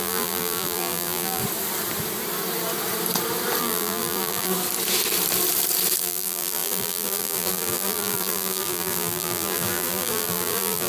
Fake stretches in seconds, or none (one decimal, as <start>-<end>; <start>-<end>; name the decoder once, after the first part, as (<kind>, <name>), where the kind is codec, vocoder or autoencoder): 0.0-1.4 (vocoder, BigVGAN v2); 3.6-4.5; 6.0-10.9